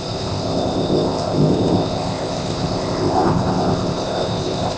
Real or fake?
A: fake